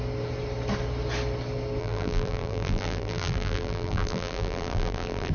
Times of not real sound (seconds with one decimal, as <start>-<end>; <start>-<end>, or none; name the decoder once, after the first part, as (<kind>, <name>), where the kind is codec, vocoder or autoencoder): 1.8-5.3 (vocoder, BigVGAN v2)

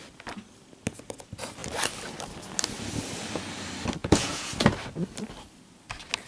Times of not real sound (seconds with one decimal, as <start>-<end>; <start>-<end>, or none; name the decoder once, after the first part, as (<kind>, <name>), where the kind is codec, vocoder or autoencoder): 4.0-4.5 (vocoder, Vocos)

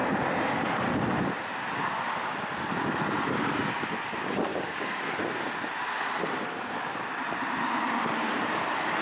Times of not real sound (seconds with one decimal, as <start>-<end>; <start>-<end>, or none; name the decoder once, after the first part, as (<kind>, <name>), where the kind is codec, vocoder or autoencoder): 4.5-5.1 (codec, DAC)

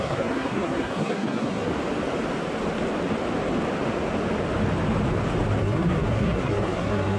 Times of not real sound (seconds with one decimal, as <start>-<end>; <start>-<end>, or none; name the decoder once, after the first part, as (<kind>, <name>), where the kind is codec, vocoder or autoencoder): 0.0-1.7 (codec, SNAC); 5.6-7.2

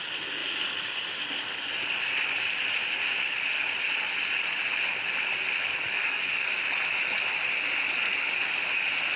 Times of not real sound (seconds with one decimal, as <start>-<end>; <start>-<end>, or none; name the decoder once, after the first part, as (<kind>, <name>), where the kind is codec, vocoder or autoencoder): 5.7-6.6 (codec, DAC)

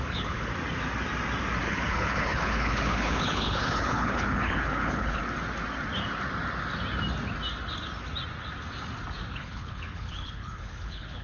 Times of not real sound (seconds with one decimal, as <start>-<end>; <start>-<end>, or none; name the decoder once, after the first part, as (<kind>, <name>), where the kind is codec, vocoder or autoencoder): 0.0-0.5 (codec, HILCodec); 1.6-5.2; 9.3-11.2